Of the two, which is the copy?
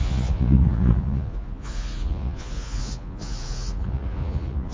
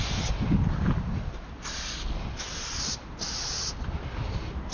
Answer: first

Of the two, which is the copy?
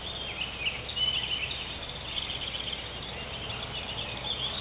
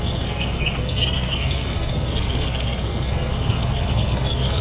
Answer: second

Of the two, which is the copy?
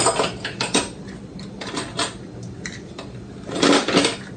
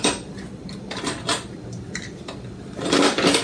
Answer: second